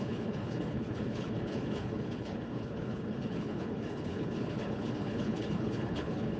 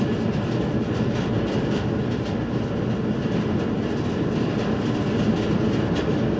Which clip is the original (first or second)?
second